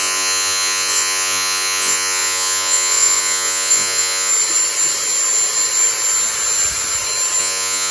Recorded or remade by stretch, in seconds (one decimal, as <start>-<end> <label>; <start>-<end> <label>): 0.0-4.3 remade; 4.3-7.4 recorded; 7.4-7.9 remade